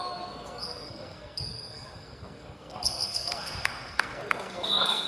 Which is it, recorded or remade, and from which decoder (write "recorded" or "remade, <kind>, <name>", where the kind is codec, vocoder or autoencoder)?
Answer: remade, codec, SNAC